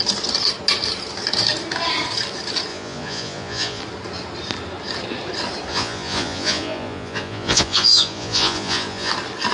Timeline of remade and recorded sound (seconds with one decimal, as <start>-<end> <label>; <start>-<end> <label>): 0.0-2.7 recorded; 2.7-3.8 remade; 3.8-5.7 recorded; 5.7-9.1 remade; 9.1-9.5 recorded